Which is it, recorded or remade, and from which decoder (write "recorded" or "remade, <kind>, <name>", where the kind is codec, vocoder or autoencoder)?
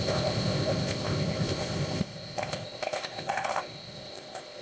remade, codec, ZipCodec